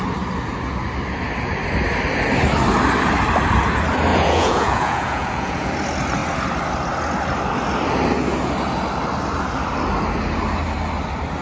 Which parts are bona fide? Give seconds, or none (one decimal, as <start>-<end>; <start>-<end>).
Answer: 0.0-4.1; 5.7-11.4